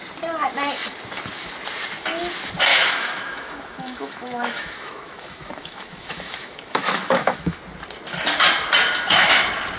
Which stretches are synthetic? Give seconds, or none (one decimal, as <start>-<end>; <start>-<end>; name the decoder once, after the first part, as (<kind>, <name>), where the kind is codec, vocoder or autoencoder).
2.7-7.6 (autoencoder, DAC-VAE)